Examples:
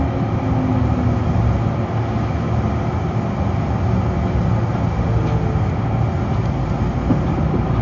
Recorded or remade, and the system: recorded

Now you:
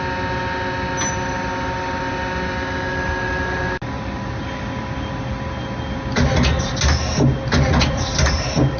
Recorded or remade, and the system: recorded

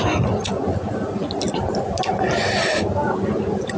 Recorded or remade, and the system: recorded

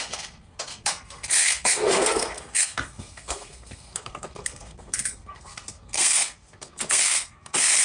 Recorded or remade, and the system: remade, codec, SNAC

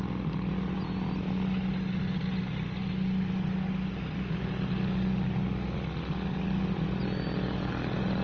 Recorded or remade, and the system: recorded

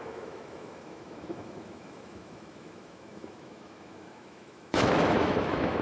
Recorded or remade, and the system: remade, autoencoder, DAC-VAE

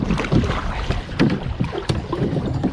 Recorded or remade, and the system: recorded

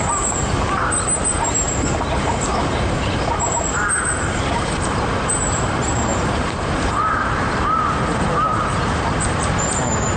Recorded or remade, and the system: remade, vocoder, BigVGAN v2